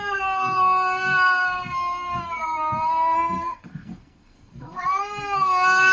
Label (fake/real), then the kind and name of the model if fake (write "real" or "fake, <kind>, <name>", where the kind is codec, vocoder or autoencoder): fake, codec, SNAC